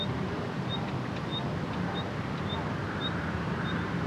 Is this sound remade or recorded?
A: recorded